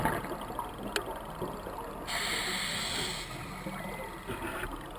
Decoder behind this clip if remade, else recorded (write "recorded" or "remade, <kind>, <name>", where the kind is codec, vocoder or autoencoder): recorded